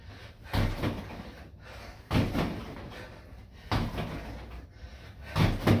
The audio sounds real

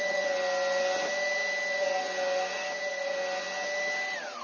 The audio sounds real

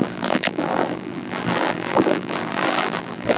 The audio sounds fake